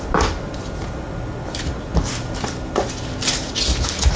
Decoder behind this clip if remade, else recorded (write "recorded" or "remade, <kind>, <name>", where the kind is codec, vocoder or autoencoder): recorded